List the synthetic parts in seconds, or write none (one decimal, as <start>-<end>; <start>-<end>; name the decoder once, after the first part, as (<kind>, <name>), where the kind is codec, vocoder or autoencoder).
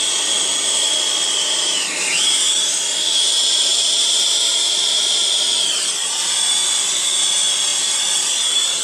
3.7-6.2 (vocoder, BigVGAN v2)